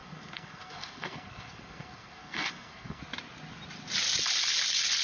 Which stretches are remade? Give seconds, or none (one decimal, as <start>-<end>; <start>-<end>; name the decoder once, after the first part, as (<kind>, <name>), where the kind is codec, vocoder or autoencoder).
0.0-3.0 (codec, SNAC)